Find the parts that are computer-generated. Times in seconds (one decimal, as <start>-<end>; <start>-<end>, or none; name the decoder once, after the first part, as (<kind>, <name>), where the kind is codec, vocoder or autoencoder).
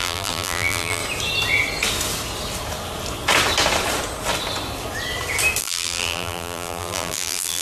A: 0.0-1.0 (vocoder, BigVGAN v2); 5.6-7.6